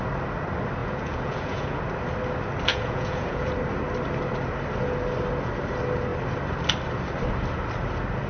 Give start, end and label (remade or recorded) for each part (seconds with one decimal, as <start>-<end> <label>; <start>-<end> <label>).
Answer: 0.0-0.8 recorded; 0.8-1.8 remade; 1.8-2.7 recorded; 2.7-3.5 remade; 3.5-8.3 recorded